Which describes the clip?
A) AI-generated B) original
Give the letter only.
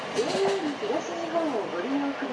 B